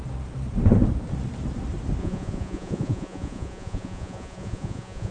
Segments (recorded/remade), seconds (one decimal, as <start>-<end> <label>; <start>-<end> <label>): 0.0-2.0 recorded; 2.0-5.1 remade